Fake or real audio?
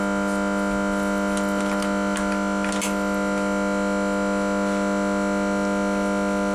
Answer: real